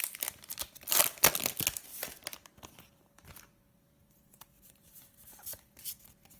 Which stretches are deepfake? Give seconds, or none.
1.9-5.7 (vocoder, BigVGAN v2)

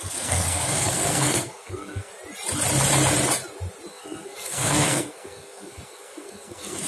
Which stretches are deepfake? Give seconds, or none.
0.0-2.1 (codec, SNAC); 3.9-6.9